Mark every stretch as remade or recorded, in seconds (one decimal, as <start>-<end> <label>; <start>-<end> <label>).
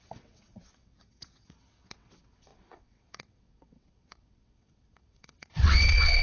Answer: 0.0-6.2 remade